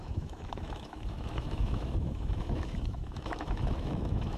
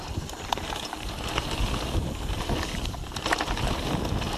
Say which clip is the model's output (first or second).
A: first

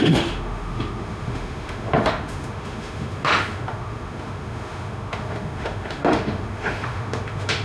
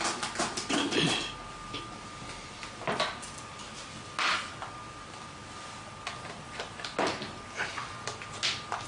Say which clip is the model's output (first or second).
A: first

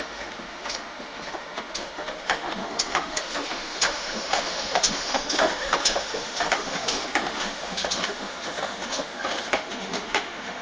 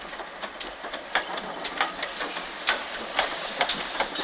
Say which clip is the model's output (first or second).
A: first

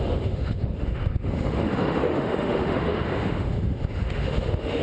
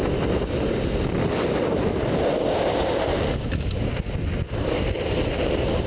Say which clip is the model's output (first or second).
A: first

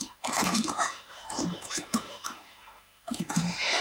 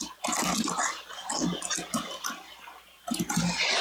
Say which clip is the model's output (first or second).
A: first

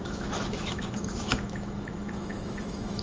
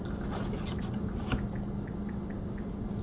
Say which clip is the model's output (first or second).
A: first